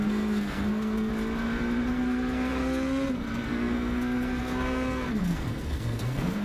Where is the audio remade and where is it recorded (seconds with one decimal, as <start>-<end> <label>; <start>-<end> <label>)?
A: 0.0-1.1 remade; 1.1-1.9 recorded; 1.9-6.4 remade